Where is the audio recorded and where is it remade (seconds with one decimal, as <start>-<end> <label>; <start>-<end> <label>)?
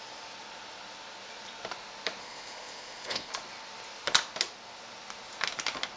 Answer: 0.0-2.2 recorded; 2.2-3.3 remade; 3.3-6.0 recorded